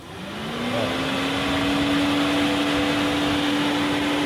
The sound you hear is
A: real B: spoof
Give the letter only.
A